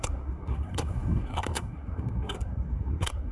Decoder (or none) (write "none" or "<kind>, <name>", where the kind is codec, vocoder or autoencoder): codec, SNAC